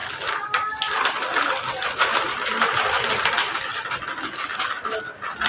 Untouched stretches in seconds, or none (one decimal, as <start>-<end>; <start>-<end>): 0.0-5.5